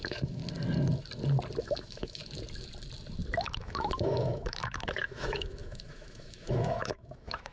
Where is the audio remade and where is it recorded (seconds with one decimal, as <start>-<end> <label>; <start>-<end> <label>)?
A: 0.0-0.4 remade; 0.4-1.6 recorded; 1.6-2.2 remade; 2.2-3.4 recorded; 3.4-7.5 remade